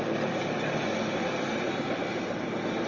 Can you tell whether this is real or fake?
real